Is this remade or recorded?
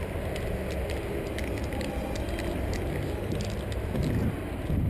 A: recorded